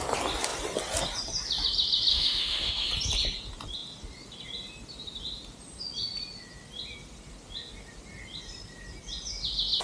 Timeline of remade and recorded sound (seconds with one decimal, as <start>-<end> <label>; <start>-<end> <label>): 0.0-2.1 recorded; 2.1-2.9 remade; 2.9-9.8 recorded